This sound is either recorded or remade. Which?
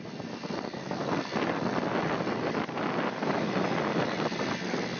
recorded